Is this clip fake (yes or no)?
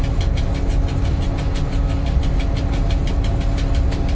no